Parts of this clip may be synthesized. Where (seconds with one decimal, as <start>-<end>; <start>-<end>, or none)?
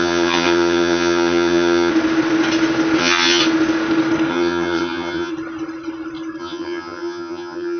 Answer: 0.0-1.9; 3.0-3.4; 4.3-5.3; 6.4-7.8